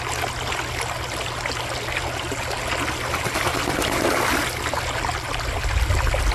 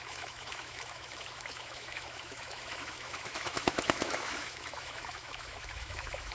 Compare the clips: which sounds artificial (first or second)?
second